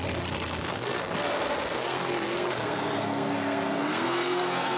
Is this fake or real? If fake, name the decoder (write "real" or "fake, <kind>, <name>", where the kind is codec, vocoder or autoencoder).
fake, codec, SNAC